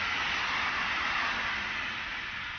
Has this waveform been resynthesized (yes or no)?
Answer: no